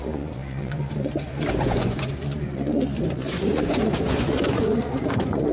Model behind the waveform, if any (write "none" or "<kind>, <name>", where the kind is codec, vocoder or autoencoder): vocoder, Vocos